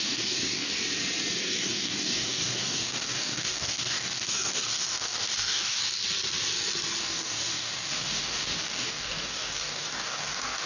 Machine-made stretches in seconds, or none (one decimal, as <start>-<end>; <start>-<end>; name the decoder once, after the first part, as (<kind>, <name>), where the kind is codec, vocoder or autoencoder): 0.0-0.7 (codec, DAC); 1.4-5.8; 7.0-10.7